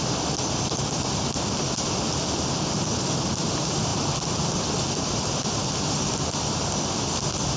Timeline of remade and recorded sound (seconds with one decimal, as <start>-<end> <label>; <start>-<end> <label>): 0.0-7.6 remade